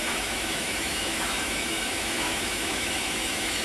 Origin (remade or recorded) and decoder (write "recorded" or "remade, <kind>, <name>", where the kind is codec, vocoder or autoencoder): remade, autoencoder, DAC-VAE